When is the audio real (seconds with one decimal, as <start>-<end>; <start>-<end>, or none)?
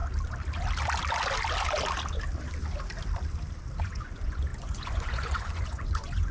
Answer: 0.0-3.8